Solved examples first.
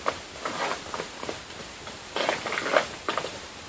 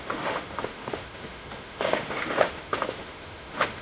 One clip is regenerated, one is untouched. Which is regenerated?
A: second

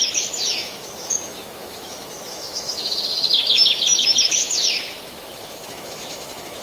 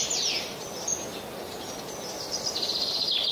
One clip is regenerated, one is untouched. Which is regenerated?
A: first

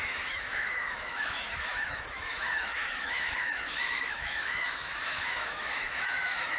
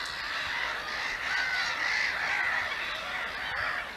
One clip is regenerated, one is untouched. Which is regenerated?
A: first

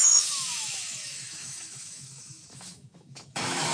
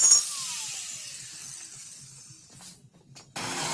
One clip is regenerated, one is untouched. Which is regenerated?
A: first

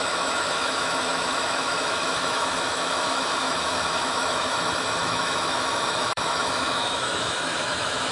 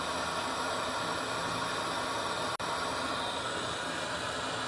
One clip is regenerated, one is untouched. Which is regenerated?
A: first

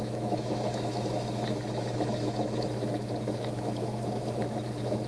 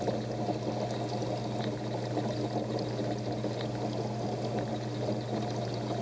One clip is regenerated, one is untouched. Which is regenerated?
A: first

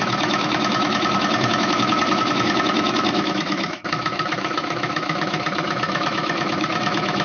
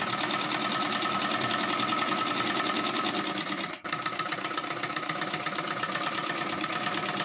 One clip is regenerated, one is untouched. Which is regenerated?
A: first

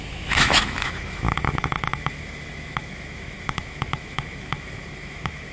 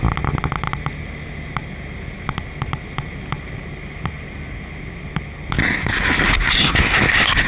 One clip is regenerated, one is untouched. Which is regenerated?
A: first